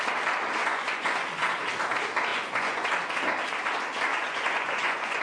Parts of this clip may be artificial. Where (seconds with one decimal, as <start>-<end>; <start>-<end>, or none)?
0.6-1.5; 2.3-2.9; 4.1-5.2